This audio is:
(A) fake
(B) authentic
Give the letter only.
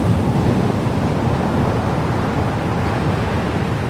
B